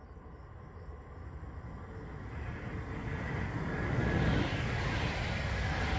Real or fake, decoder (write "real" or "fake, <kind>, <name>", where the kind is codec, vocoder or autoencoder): real